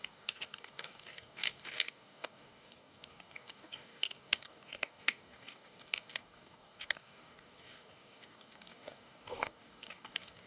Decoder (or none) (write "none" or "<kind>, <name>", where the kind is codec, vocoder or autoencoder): codec, DAC